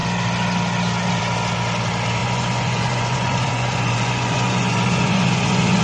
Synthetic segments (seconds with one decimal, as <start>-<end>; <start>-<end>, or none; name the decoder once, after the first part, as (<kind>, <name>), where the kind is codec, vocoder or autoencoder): 2.2-5.8 (vocoder, Vocos)